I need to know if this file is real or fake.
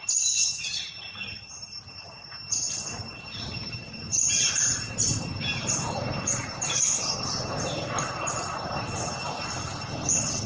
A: fake